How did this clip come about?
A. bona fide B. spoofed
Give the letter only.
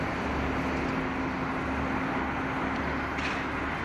A